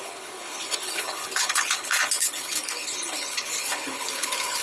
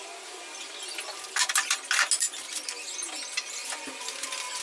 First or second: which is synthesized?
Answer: first